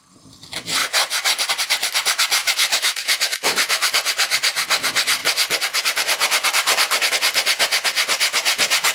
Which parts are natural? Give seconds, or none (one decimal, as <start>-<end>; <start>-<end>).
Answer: 0.0-2.4; 3.9-8.9

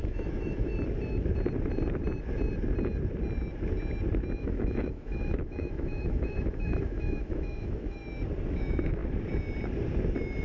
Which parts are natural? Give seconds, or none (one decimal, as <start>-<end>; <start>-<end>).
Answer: 0.7-4.4; 8.0-8.5; 9.0-10.4

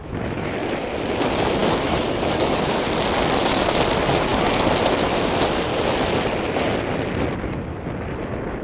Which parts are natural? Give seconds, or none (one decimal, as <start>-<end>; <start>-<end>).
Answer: 0.5-1.6; 2.7-8.6